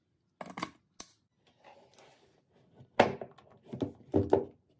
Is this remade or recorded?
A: recorded